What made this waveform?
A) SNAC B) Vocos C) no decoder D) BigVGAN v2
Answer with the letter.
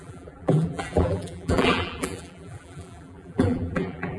D